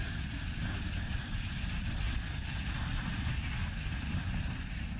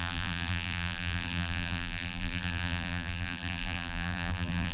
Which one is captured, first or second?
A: first